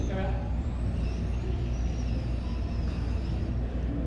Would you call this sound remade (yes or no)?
no